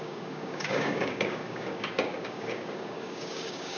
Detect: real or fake fake